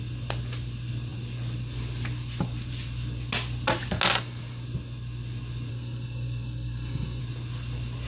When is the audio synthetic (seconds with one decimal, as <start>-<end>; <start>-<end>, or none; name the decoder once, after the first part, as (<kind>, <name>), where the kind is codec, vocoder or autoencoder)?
5.7-7.2 (codec, SNAC)